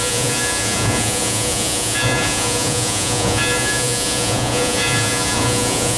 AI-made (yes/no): yes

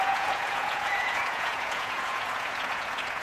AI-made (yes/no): yes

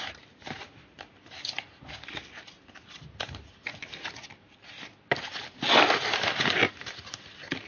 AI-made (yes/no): no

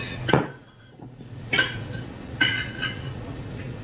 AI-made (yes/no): yes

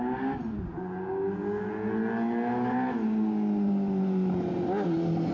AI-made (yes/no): no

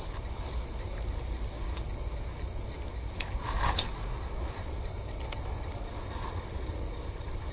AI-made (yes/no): no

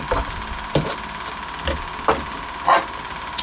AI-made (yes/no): no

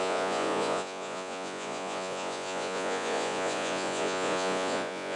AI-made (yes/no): yes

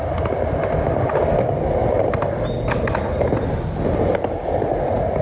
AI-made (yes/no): no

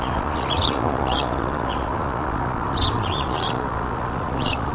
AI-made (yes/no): yes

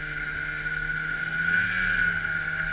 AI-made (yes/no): no